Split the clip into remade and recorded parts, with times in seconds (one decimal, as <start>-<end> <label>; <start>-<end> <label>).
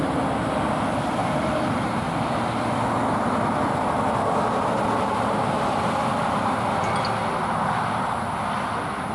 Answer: 0.0-1.2 recorded; 1.2-2.1 remade; 2.1-9.1 recorded